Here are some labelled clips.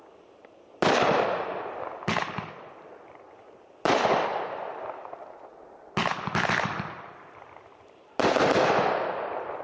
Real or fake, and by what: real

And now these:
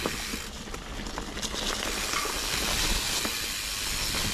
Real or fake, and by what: real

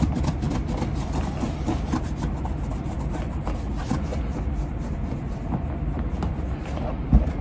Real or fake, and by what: real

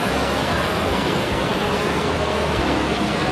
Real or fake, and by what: fake, codec, SNAC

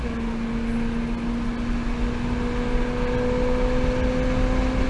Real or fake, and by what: real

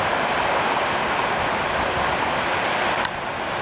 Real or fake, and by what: real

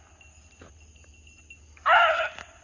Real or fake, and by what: real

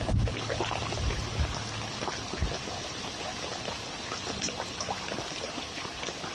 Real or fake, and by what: real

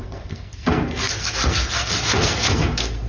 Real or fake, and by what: fake, codec, SNAC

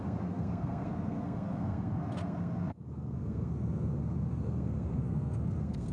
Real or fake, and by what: fake, codec, SNAC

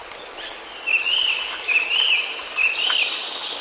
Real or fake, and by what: real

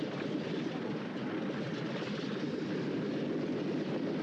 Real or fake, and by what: real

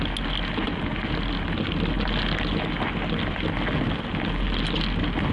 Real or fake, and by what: real